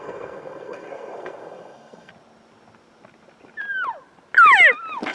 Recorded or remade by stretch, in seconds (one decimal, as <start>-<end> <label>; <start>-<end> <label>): 0.0-2.1 remade; 2.1-5.1 recorded